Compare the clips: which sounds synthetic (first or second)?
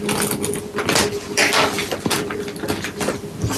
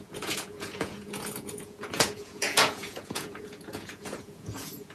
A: second